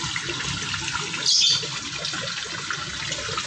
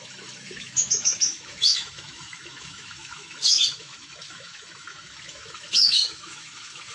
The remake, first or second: second